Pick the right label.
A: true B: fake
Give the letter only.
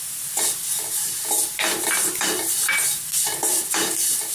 A